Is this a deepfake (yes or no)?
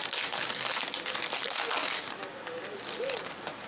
no